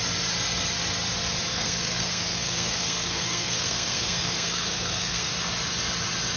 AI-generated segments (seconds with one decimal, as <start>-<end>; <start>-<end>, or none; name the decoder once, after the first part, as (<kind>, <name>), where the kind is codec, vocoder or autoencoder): 1.5-5.3 (codec, SNAC)

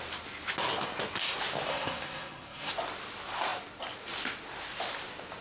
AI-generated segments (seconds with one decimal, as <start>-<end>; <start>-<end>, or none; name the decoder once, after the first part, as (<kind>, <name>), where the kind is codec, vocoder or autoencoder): 1.7-2.7 (codec, SNAC)

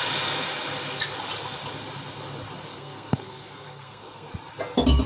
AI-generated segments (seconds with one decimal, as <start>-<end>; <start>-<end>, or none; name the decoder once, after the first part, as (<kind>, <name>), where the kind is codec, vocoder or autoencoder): 2.7-4.3 (codec, SNAC)

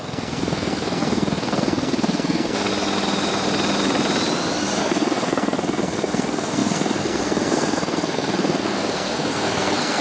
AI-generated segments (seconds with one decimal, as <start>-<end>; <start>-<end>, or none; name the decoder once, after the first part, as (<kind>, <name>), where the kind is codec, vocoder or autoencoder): 0.0-2.7 (codec, SNAC); 4.8-10.0